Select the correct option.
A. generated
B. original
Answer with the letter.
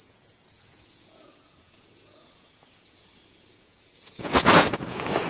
A